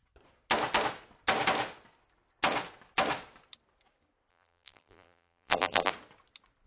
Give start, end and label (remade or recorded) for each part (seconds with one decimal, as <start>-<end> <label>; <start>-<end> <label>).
0.0-4.3 recorded; 4.3-5.9 remade; 5.9-6.7 recorded